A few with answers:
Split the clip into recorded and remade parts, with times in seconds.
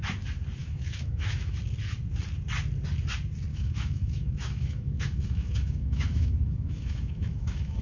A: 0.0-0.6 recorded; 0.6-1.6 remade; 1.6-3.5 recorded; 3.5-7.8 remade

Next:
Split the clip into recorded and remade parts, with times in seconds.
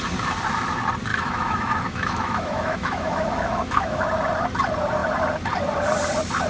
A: 0.0-1.1 recorded; 1.1-4.0 remade; 4.0-6.5 recorded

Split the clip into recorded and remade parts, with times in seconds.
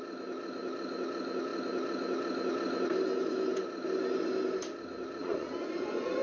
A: 0.0-5.2 recorded; 5.2-6.2 remade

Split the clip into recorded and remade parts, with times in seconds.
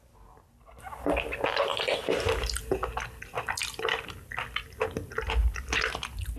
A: 0.0-6.4 recorded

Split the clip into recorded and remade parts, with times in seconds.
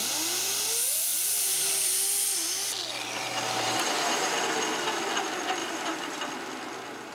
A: 0.0-1.1 recorded; 1.1-2.0 remade; 2.0-2.9 recorded; 2.9-4.4 remade; 4.4-5.6 recorded; 5.6-6.2 remade; 6.2-7.1 recorded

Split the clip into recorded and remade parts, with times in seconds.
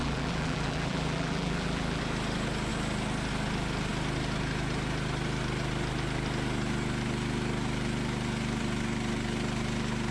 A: 0.0-2.0 remade; 2.0-10.1 recorded